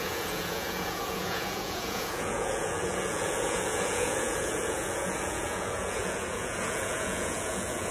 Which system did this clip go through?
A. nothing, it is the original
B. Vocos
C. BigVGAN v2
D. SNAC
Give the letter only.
B